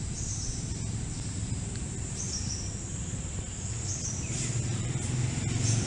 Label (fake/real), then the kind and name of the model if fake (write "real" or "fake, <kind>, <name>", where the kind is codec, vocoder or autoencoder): fake, vocoder, BigVGAN v2